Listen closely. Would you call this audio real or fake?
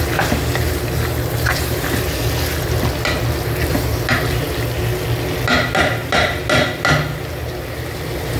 real